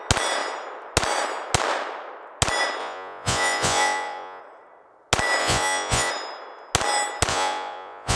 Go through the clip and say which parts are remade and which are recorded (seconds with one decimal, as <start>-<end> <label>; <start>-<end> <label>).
0.0-2.8 recorded; 2.8-4.4 remade; 4.4-5.4 recorded; 5.4-6.1 remade; 6.1-7.3 recorded; 7.3-8.2 remade

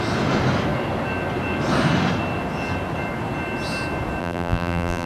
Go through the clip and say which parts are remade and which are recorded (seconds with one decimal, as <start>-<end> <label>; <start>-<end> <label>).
0.0-4.2 recorded; 4.2-5.1 remade

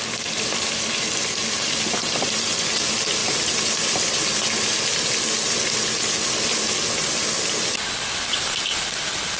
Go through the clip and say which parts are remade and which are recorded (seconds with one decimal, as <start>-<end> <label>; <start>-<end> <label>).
0.0-9.4 recorded

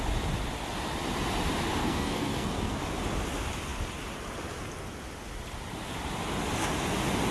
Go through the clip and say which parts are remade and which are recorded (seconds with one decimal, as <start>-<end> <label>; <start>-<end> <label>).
0.0-1.8 recorded; 1.8-2.8 remade; 2.8-7.3 recorded